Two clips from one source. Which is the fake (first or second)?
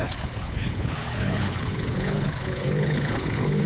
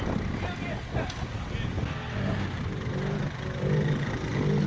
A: first